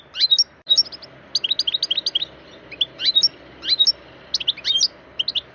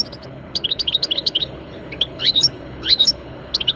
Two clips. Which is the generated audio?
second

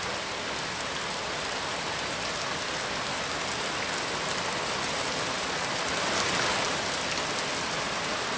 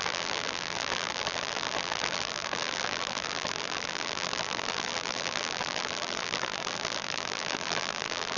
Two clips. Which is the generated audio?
second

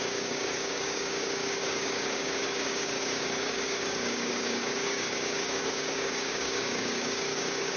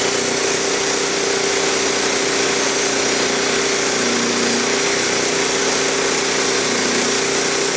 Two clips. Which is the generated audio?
first